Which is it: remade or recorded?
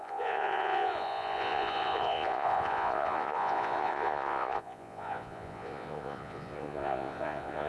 remade